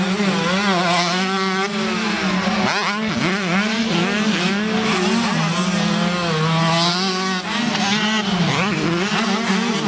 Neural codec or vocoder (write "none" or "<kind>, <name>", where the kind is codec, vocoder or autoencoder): none